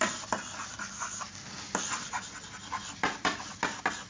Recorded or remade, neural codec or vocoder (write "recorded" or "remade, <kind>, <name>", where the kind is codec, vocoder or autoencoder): recorded